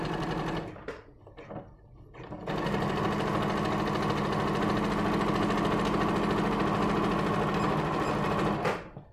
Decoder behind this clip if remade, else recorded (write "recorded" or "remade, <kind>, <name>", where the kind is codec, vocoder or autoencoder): recorded